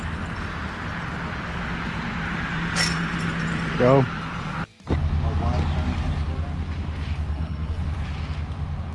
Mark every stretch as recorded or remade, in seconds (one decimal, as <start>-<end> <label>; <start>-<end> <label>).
0.0-7.3 recorded; 7.3-7.8 remade; 7.8-8.9 recorded